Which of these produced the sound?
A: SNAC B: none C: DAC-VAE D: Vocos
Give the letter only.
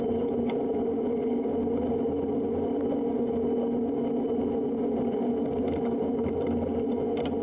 B